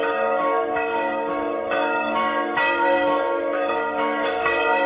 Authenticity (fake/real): fake